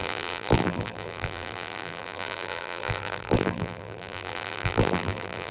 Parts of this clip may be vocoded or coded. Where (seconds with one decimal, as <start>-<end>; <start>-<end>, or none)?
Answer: 0.0-5.5

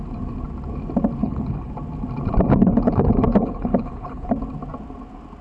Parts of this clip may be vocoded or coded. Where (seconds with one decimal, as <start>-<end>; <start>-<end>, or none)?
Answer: 1.2-1.7; 2.5-4.3